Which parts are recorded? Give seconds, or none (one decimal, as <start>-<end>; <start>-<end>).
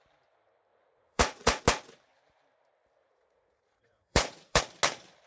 0.0-0.7; 1.6-3.0; 4.6-5.3